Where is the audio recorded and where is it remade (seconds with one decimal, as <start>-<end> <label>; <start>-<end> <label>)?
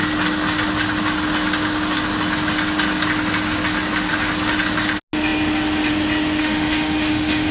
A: 0.0-6.4 recorded; 6.4-7.5 remade